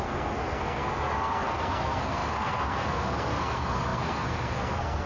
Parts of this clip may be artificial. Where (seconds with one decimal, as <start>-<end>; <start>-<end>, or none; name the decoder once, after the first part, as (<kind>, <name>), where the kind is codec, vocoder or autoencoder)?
0.0-5.1 (codec, SNAC)